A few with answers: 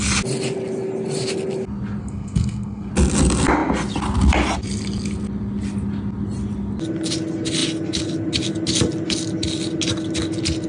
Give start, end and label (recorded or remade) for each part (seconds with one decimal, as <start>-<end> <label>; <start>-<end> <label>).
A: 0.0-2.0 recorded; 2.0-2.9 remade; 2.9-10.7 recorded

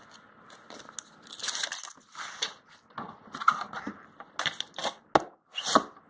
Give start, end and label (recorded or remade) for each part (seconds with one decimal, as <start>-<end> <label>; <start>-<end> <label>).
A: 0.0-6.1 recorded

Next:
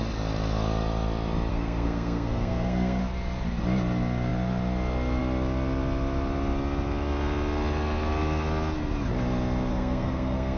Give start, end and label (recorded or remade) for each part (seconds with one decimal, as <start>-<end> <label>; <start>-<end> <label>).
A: 0.0-1.5 recorded; 1.5-3.0 remade; 3.0-9.7 recorded; 9.7-10.6 remade

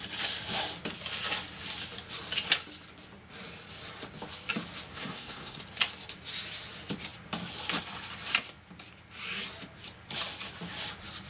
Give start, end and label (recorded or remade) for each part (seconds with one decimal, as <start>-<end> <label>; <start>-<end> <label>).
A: 0.0-4.9 recorded; 4.9-5.6 remade; 5.6-11.3 recorded

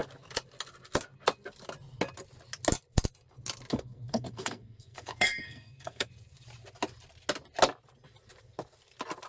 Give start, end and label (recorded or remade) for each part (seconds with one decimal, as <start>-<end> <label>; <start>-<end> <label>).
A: 0.0-3.7 recorded; 3.7-6.1 remade; 6.1-9.3 recorded

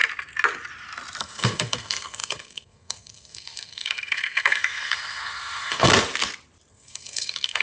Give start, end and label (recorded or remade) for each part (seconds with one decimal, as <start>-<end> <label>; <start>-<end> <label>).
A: 0.0-1.2 recorded; 1.2-5.9 remade; 5.9-6.7 recorded; 6.7-7.6 remade